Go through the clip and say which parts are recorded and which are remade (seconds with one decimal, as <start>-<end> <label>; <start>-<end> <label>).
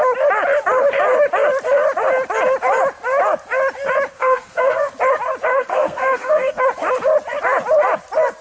0.0-4.1 recorded; 4.1-4.9 remade; 4.9-5.5 recorded; 5.5-6.6 remade; 6.6-8.4 recorded